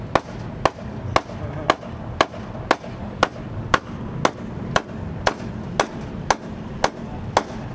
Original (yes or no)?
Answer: yes